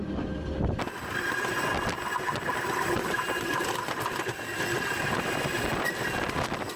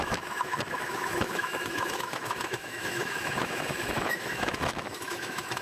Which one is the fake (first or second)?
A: second